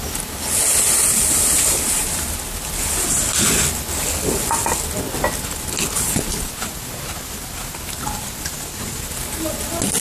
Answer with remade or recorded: recorded